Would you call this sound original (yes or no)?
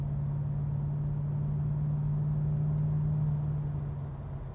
yes